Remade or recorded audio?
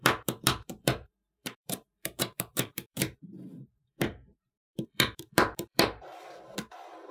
remade